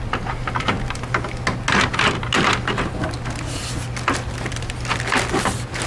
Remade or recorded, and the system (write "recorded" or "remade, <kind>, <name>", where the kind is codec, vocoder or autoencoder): recorded